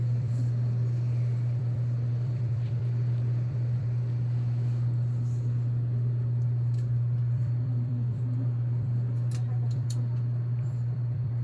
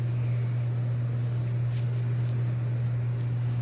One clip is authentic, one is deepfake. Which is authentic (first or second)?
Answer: second